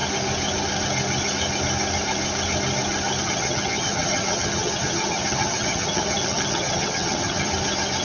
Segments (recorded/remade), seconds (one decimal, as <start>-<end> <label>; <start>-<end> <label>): 0.0-3.2 recorded; 3.2-7.5 remade; 7.5-8.0 recorded